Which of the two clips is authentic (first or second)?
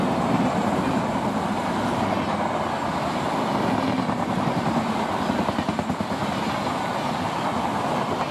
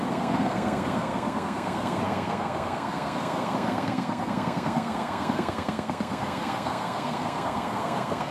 first